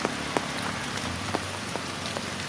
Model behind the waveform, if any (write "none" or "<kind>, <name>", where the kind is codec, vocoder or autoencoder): none